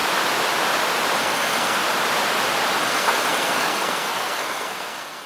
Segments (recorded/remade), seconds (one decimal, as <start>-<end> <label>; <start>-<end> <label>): 0.0-1.2 recorded; 1.2-1.8 remade; 1.8-2.8 recorded; 2.8-5.3 remade